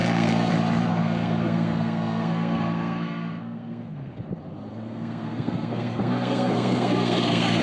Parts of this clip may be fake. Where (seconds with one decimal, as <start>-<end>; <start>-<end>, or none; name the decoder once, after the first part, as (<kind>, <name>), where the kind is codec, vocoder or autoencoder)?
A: 0.0-0.5 (codec, SNAC); 0.9-4.2; 4.7-7.6